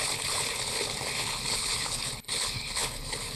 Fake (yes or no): yes